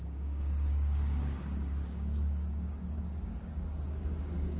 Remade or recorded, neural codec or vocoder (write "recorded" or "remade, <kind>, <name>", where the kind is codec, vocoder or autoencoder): remade, codec, DAC